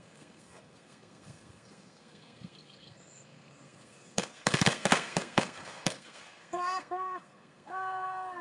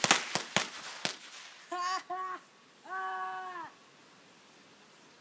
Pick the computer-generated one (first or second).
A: first